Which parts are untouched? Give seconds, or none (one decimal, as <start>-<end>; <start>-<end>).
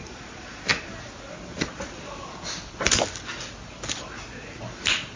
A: 0.0-5.2